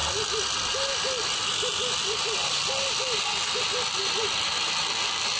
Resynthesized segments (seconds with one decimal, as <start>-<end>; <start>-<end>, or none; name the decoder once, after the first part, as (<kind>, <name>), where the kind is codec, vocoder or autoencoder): 0.0-3.2 (vocoder, BigVGAN v2); 4.2-4.8